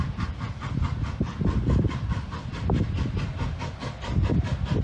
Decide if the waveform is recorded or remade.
recorded